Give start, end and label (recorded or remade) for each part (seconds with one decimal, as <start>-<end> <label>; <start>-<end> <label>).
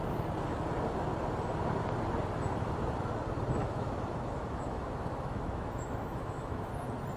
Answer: 0.0-3.6 recorded; 3.6-6.7 remade; 6.7-7.2 recorded